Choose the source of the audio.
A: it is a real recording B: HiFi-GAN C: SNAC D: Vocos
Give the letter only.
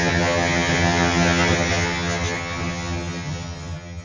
B